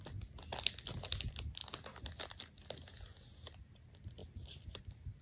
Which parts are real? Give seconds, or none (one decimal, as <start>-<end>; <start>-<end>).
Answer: 0.0-5.2